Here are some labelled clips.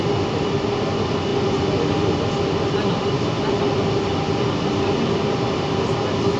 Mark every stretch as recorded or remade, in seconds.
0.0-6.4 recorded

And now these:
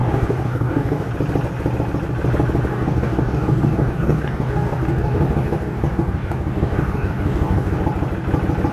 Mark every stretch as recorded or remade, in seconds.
0.0-1.1 remade; 1.1-2.7 recorded; 2.7-7.8 remade; 7.8-8.7 recorded

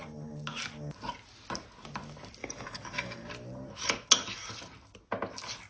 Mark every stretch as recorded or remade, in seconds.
0.0-2.4 recorded; 2.4-3.3 remade; 3.3-5.7 recorded